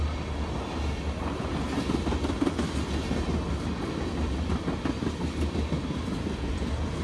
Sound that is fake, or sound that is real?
real